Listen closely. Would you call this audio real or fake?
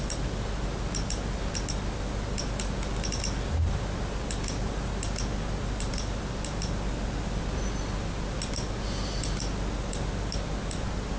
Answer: real